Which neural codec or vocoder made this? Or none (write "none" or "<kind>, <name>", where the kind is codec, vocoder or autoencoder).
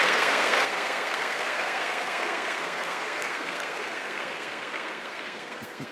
codec, SNAC